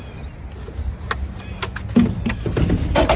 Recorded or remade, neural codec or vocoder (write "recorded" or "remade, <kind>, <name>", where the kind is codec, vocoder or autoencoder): recorded